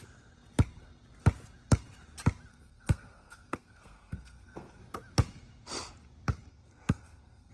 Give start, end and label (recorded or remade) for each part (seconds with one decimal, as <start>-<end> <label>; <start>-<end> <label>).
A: 0.0-2.5 recorded; 2.5-4.8 remade; 4.8-6.5 recorded; 6.5-7.5 remade

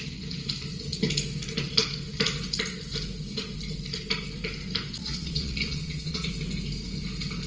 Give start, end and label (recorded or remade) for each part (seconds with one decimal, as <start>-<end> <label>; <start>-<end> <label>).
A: 0.0-5.0 recorded; 5.0-6.3 remade; 6.3-7.5 recorded

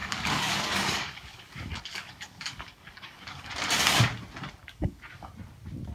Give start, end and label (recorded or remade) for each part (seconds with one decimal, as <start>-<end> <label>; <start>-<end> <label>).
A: 0.0-3.5 remade; 3.5-4.6 recorded; 4.6-5.3 remade; 5.3-5.9 recorded

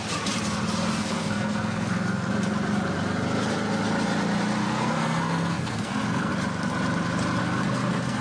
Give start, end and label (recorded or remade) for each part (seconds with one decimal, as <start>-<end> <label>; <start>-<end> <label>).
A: 0.0-1.0 recorded; 1.0-2.3 remade; 2.3-4.6 recorded; 4.6-6.3 remade; 6.3-7.4 recorded; 7.4-8.2 remade

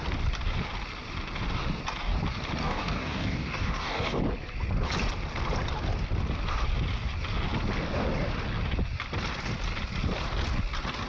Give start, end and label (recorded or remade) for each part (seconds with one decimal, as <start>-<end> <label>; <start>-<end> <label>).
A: 0.0-2.6 recorded; 2.6-4.2 remade; 4.2-11.1 recorded

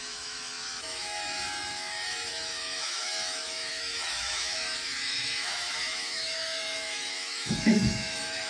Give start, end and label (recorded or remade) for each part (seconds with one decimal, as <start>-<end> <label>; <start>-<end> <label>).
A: 0.0-8.5 remade

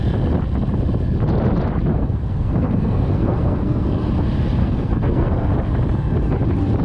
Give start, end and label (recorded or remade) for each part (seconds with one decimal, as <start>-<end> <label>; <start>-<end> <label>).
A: 0.0-1.9 recorded; 1.9-4.1 remade; 4.1-4.6 recorded; 4.6-5.5 remade; 5.5-6.8 recorded

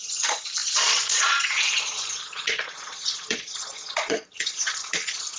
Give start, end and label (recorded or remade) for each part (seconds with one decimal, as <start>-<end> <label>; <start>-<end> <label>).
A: 0.0-5.4 remade